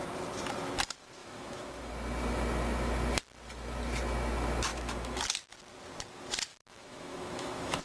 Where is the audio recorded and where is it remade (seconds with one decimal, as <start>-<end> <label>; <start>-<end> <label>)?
0.0-1.2 recorded; 1.2-1.9 remade; 1.9-4.7 recorded; 4.7-5.2 remade; 5.2-6.5 recorded; 6.5-7.8 remade